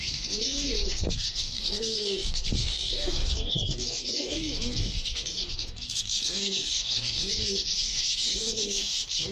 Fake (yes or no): yes